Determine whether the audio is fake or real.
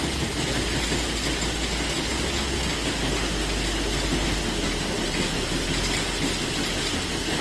real